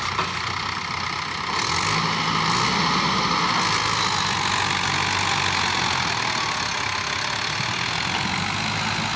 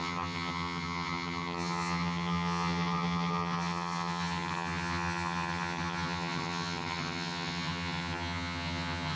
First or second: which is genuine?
first